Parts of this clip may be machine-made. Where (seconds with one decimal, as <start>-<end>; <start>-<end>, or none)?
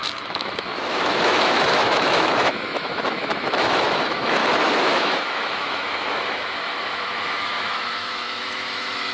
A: 0.0-9.1